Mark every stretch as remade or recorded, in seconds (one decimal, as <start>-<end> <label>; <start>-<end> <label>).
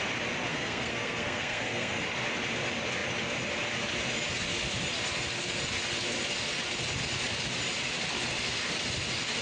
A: 0.0-0.5 recorded; 0.5-2.0 remade; 2.0-9.4 recorded